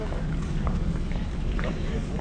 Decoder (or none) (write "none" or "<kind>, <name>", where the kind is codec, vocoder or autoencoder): codec, DAC